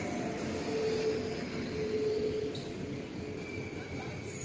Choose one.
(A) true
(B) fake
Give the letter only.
A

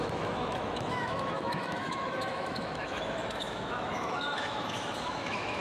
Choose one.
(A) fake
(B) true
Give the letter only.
A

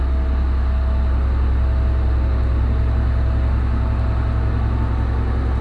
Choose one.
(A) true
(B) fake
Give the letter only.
A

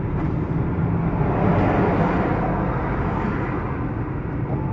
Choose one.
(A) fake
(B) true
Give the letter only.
B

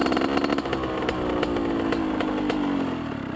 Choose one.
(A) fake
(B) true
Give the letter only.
B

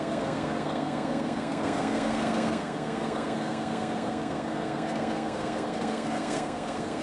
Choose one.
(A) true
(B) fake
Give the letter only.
B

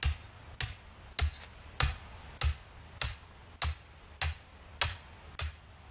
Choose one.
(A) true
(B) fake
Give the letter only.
A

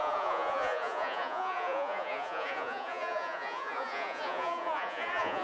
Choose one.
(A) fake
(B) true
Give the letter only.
A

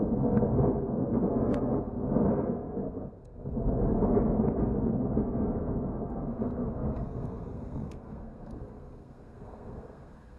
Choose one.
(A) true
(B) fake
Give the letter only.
B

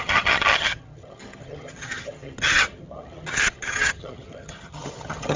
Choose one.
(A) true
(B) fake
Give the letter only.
B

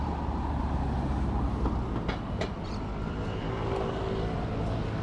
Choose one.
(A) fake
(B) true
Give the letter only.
B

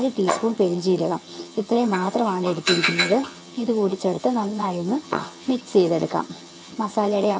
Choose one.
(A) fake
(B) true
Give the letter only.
A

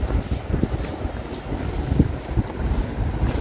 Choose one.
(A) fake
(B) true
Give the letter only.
B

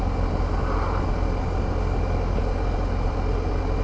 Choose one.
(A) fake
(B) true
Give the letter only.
B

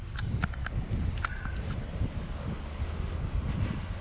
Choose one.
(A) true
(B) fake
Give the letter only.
A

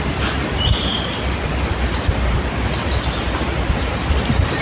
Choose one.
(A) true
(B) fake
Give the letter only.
A